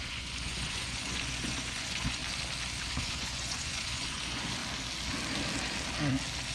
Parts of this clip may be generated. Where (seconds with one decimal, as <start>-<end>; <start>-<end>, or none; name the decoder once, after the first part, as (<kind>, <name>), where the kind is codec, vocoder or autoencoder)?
0.0-2.2 (vocoder, Vocos); 2.9-4.6